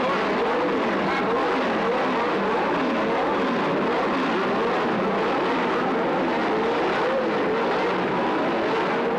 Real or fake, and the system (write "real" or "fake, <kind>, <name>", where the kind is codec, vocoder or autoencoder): real